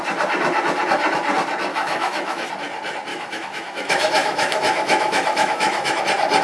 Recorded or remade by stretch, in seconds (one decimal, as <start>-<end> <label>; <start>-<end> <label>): 0.0-1.7 recorded; 1.7-2.5 remade; 2.5-3.1 recorded; 3.1-6.0 remade; 6.0-6.4 recorded